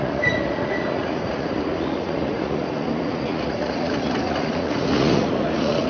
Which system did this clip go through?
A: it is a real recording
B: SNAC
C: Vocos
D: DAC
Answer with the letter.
C